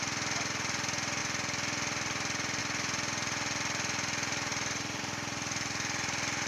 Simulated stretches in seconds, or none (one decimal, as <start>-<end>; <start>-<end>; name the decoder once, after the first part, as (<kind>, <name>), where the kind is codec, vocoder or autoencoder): none